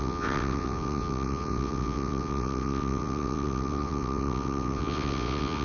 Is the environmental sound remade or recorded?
remade